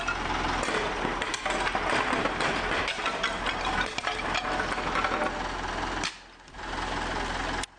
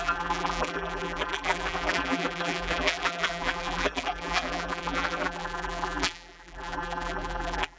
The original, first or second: first